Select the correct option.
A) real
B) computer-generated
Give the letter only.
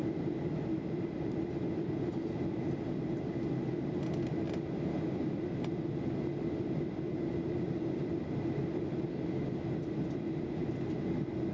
A